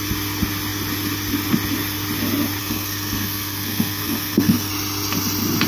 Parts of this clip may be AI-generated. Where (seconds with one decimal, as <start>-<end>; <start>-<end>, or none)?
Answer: 2.6-4.7